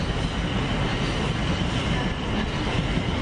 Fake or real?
real